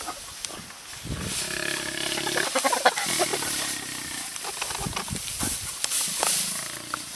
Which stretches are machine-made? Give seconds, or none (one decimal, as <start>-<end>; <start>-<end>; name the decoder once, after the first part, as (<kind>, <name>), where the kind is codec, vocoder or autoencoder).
none